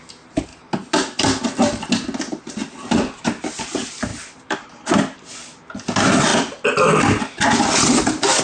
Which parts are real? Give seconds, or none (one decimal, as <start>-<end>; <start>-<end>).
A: 0.0-8.4